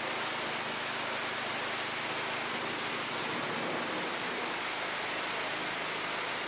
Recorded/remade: recorded